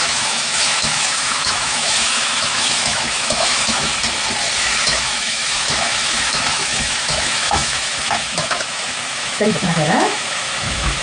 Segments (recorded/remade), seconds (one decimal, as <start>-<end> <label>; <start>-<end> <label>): 0.0-3.9 remade; 3.9-4.6 recorded; 4.6-11.0 remade